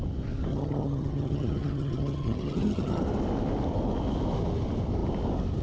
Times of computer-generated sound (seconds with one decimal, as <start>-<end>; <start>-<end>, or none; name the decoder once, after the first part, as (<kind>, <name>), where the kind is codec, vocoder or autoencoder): 0.5-3.0 (vocoder, HiFi-GAN)